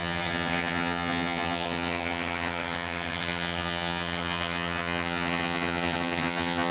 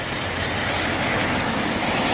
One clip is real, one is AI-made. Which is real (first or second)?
second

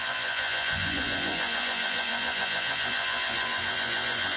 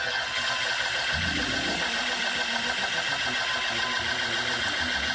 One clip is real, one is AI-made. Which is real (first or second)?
second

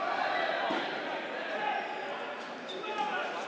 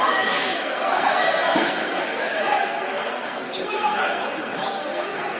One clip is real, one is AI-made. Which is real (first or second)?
first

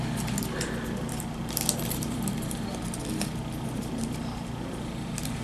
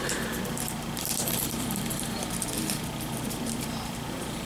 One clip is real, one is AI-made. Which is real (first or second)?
first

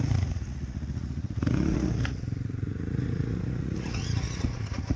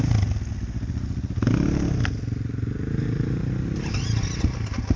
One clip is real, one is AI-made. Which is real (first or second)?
second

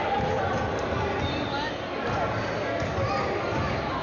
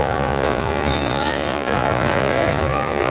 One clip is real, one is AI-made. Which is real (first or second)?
first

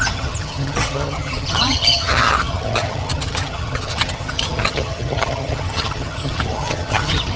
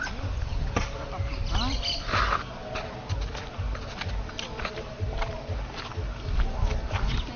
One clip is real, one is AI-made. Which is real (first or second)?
second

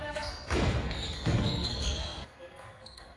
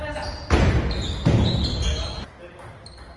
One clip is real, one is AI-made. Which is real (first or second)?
second